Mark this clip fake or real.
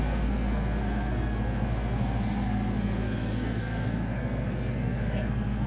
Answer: fake